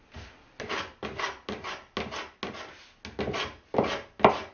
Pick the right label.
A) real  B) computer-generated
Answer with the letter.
A